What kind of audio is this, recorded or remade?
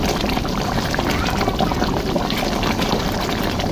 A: recorded